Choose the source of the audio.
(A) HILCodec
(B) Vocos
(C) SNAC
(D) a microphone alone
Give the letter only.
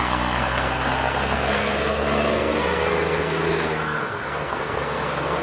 C